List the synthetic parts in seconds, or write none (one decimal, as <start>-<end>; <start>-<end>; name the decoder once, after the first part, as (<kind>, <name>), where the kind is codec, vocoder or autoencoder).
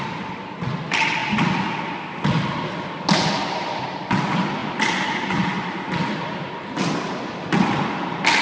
none